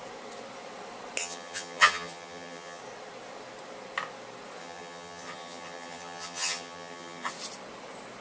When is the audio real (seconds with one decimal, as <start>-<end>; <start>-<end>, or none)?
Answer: 0.0-1.2; 2.8-4.6; 7.3-8.2